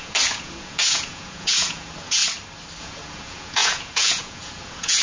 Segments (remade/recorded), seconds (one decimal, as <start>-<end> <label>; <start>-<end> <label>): 0.0-2.2 remade; 2.2-2.8 recorded; 2.8-5.0 remade